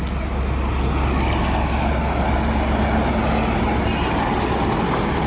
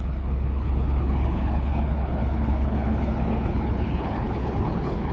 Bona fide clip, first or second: first